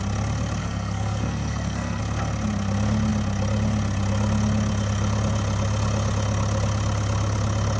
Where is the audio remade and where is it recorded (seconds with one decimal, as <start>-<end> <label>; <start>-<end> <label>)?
0.0-0.6 recorded; 0.6-2.0 remade; 2.0-7.8 recorded